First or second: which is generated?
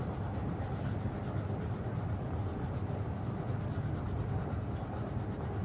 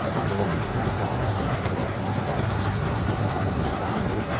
second